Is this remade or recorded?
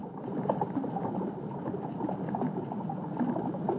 remade